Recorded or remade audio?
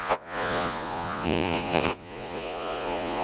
remade